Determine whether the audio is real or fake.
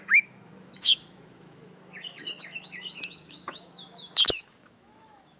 fake